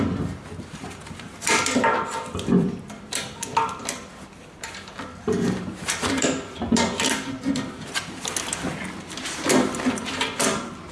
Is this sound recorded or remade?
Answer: remade